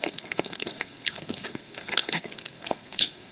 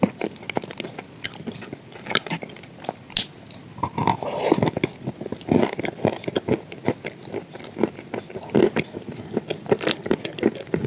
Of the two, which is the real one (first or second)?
second